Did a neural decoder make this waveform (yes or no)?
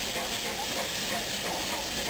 no